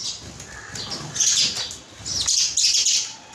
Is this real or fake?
real